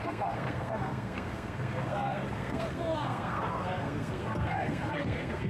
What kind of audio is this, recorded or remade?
remade